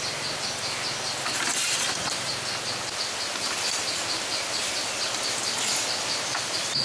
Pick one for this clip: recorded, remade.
recorded